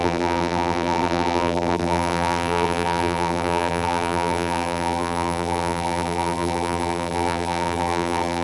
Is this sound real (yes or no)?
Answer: no